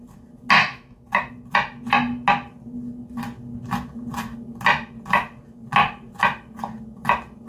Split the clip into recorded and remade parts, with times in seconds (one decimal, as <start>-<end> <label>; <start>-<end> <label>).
0.0-0.6 recorded; 0.6-1.3 remade; 1.3-7.5 recorded